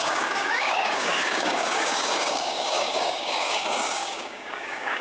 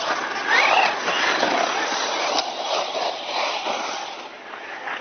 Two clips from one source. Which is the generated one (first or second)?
first